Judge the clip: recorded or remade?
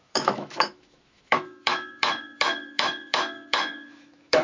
remade